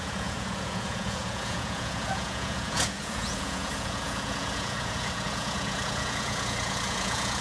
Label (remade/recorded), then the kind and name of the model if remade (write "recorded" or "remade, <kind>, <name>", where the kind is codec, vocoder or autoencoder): remade, vocoder, Vocos